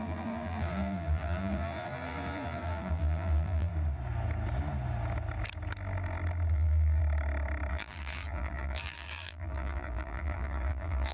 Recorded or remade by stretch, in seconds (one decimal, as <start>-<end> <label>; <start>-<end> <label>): 0.0-3.7 remade; 3.7-6.5 recorded; 6.5-7.0 remade; 7.0-7.7 recorded; 7.7-11.1 remade